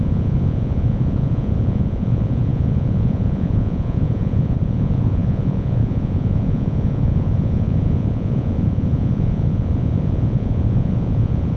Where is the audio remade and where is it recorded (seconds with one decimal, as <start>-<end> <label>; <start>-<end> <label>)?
0.0-11.6 remade